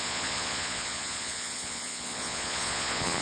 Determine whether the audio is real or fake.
fake